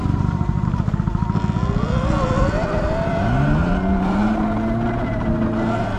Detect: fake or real real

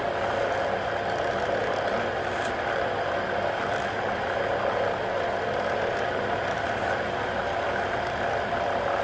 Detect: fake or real real